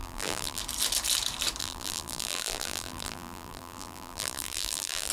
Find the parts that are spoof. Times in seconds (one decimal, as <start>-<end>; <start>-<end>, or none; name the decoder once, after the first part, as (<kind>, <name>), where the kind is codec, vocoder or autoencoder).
0.0-0.6 (vocoder, BigVGAN v2); 1.6-5.1